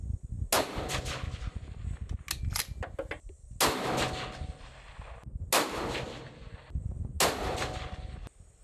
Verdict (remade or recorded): recorded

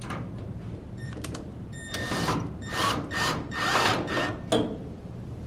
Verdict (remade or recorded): remade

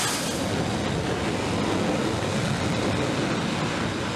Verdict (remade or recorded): recorded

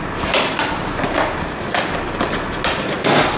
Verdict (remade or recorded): recorded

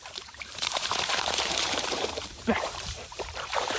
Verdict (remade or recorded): remade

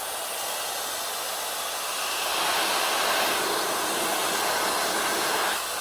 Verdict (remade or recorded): recorded